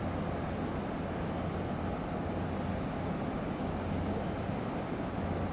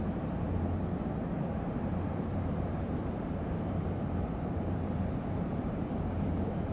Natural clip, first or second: first